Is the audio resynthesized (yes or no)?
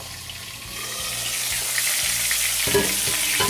no